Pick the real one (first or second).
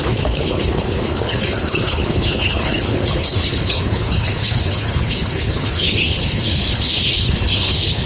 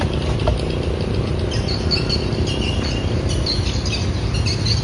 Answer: second